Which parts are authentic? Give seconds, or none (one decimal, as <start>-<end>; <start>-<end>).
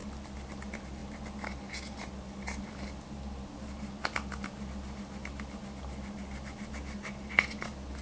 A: 0.0-8.0